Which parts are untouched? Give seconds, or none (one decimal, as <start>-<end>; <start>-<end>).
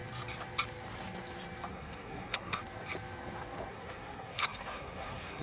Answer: 0.0-1.7; 2.6-3.7